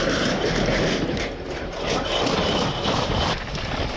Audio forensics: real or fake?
real